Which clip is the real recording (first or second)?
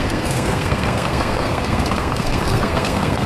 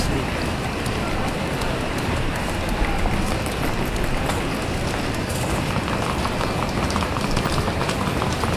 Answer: second